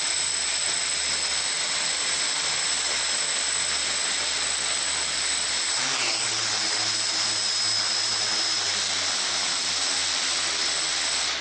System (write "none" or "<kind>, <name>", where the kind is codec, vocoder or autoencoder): none